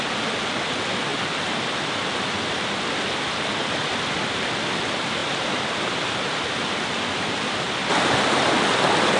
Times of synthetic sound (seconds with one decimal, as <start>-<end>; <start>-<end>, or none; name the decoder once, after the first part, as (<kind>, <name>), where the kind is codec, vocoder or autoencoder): 5.2-6.0 (vocoder, BigVGAN v2); 7.8-8.5